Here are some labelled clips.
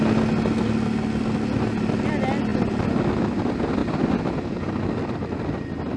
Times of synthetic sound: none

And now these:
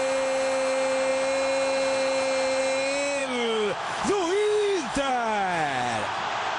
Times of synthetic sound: 3.2-5.1 (autoencoder, DAC-VAE)

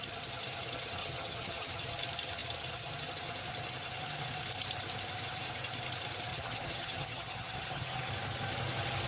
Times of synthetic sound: 1.0-1.7 (vocoder, HiFi-GAN); 6.3-8.1

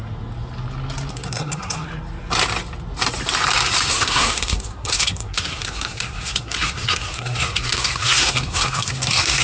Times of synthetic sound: 1.1-1.9 (codec, SNAC); 3.9-9.4

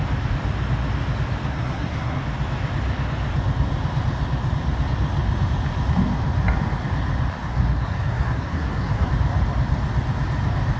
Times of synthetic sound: 1.5-2.2 (codec, SNAC); 7.5-9.1

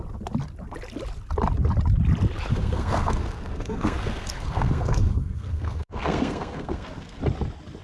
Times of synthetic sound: 2.5-7.2 (codec, SNAC)